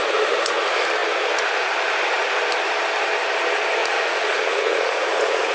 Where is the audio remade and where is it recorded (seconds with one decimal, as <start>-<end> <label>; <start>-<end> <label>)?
0.0-3.8 recorded; 3.8-5.5 remade